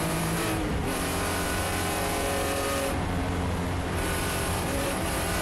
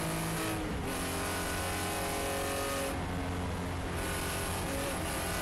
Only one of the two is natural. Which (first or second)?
second